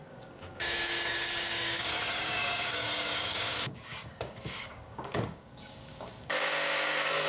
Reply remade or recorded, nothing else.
remade